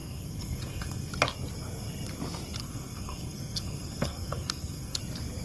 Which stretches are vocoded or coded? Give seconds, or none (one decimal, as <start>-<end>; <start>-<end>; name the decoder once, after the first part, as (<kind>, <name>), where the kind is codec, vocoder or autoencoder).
0.0-1.1 (codec, SNAC); 2.6-5.0

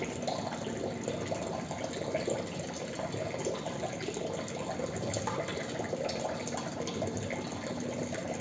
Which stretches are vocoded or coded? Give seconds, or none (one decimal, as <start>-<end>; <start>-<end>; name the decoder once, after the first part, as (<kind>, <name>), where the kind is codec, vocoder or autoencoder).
none

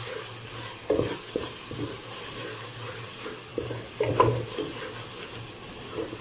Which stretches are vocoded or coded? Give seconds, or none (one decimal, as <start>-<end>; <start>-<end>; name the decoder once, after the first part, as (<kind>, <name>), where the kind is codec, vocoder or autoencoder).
none

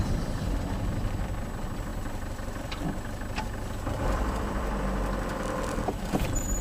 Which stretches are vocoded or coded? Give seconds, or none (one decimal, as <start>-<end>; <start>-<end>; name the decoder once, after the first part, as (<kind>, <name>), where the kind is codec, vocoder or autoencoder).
0.0-6.6 (vocoder, BigVGAN v2)

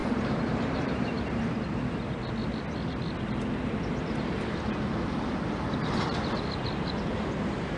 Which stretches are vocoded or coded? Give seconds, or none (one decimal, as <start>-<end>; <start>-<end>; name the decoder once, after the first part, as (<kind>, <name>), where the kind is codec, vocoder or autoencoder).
0.0-1.3 (vocoder, BigVGAN v2)

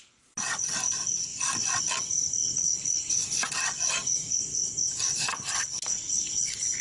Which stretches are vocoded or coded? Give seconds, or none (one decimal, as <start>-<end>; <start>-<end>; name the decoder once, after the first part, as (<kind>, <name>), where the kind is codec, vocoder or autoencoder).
2.6-3.1 (codec, HILCodec); 5.3-6.8

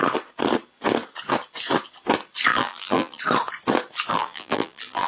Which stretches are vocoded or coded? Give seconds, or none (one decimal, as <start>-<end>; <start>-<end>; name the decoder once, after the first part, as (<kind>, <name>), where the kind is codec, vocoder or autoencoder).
2.5-3.2 (vocoder, BigVGAN v2); 4.1-5.1